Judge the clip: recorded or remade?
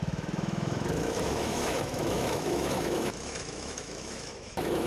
remade